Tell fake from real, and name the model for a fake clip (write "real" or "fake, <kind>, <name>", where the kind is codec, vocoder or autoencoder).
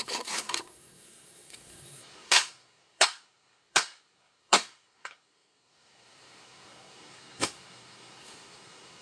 fake, codec, SNAC